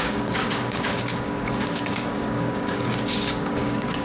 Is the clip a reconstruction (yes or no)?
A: yes